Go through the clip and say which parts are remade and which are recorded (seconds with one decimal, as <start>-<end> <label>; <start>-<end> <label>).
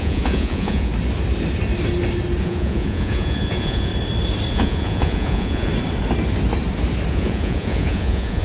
0.0-0.9 remade; 0.9-2.4 recorded; 2.4-3.9 remade; 3.9-4.5 recorded; 4.5-5.7 remade; 5.7-7.1 recorded; 7.1-8.4 remade